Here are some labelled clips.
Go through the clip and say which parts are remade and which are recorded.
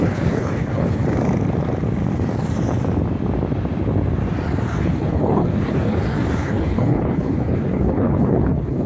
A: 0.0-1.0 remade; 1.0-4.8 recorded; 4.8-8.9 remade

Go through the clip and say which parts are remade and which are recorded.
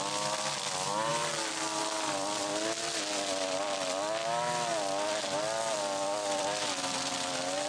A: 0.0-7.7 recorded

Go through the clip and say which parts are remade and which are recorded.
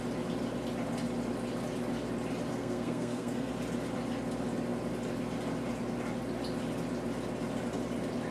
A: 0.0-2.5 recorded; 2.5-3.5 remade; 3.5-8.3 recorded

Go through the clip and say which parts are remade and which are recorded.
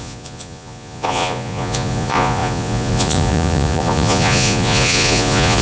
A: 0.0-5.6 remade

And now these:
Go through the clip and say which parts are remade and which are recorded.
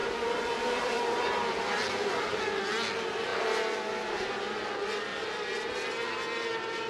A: 0.0-2.4 remade; 2.4-5.1 recorded; 5.1-5.7 remade; 5.7-6.9 recorded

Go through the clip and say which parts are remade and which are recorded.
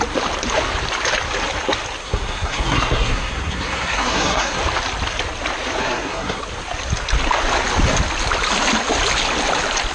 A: 0.0-2.0 recorded; 2.0-4.6 remade; 4.6-5.8 recorded; 5.8-6.4 remade; 6.4-9.9 recorded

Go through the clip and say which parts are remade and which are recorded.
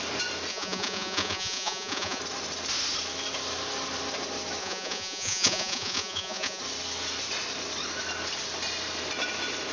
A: 0.0-0.5 recorded; 0.5-2.2 remade; 2.2-4.6 recorded; 4.6-6.6 remade; 6.6-9.7 recorded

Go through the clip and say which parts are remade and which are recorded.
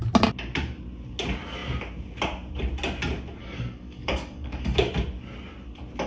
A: 0.0-3.4 recorded; 3.4-4.9 remade; 4.9-6.1 recorded